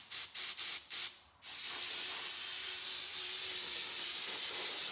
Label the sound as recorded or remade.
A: recorded